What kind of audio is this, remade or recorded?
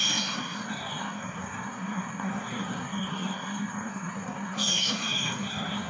remade